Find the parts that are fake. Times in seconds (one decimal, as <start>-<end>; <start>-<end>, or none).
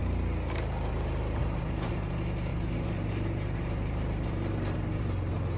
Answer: 0.0-2.1; 2.5-5.0